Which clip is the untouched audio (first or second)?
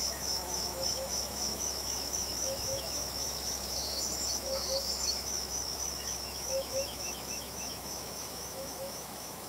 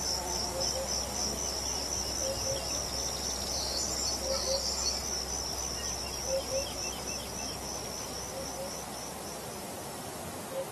second